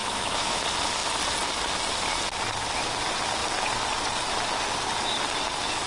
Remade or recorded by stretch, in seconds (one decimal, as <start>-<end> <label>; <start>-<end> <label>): 0.0-0.6 remade; 0.6-5.9 recorded